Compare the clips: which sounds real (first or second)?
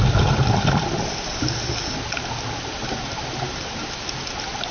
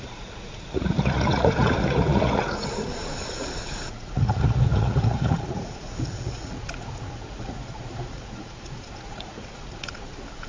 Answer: first